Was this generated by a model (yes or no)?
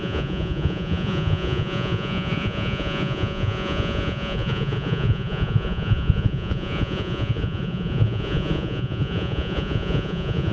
yes